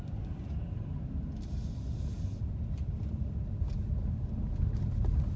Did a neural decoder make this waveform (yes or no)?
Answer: no